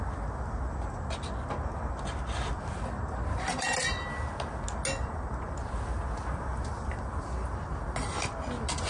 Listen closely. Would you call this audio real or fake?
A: real